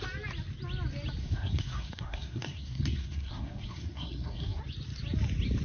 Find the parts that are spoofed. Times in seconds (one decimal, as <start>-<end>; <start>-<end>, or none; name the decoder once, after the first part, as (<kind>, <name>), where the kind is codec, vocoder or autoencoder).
1.2-4.6 (codec, SNAC)